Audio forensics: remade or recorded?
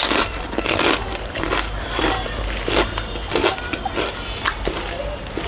recorded